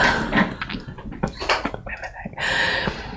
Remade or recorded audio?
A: recorded